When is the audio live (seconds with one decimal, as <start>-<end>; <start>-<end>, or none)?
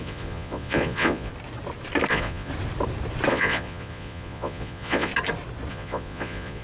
1.3-2.1; 2.5-3.3; 5.1-5.7